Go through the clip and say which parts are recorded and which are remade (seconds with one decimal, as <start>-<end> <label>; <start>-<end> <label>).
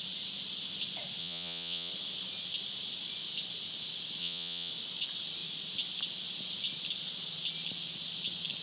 0.0-1.2 recorded; 1.2-1.9 remade; 1.9-4.2 recorded; 4.2-4.7 remade; 4.7-8.6 recorded